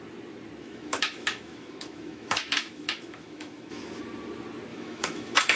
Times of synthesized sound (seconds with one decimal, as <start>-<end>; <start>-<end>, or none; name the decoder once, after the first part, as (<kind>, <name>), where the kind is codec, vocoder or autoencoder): 0.6-4.0 (autoencoder, DAC-VAE); 4.7-5.6